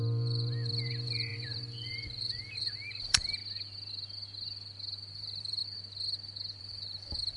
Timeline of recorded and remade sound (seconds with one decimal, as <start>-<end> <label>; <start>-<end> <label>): 0.0-3.4 remade; 3.4-5.1 recorded; 5.1-5.6 remade; 5.6-6.6 recorded; 6.6-7.4 remade